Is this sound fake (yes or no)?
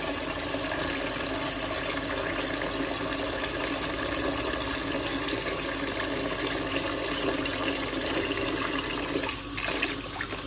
no